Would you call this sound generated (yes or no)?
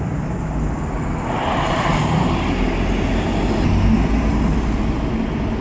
no